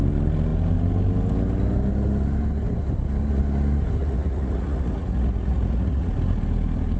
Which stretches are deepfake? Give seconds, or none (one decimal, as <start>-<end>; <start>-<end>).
4.0-6.1